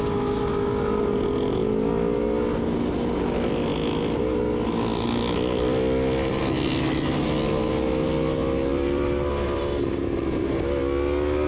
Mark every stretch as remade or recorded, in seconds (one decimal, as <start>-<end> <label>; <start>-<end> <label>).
0.0-4.9 recorded; 4.9-6.4 remade; 6.4-8.7 recorded; 8.7-10.8 remade; 10.8-11.5 recorded